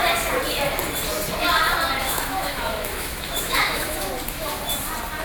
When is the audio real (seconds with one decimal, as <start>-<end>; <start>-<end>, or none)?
0.0-2.0; 4.1-5.2